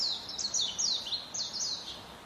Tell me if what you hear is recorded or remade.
recorded